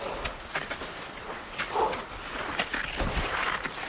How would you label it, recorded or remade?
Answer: recorded